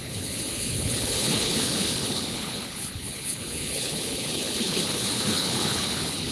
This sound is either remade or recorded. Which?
remade